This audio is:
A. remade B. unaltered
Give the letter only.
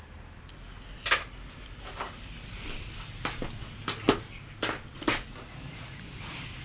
B